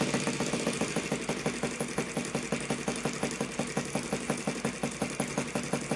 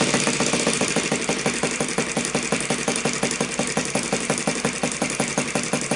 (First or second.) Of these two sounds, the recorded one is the first